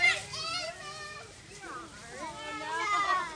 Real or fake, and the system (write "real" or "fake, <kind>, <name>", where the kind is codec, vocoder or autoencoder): real